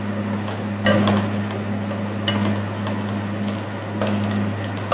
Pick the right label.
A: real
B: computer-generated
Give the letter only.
A